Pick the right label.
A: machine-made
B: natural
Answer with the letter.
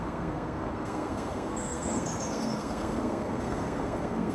A